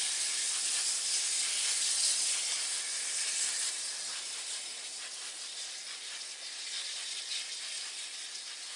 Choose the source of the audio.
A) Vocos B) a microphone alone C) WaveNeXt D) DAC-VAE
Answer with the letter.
B